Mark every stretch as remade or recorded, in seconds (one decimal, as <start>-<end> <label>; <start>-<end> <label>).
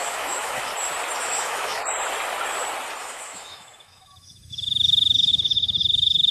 0.0-0.7 remade; 0.7-1.2 recorded; 1.2-1.8 remade; 1.8-3.0 recorded; 3.0-6.3 remade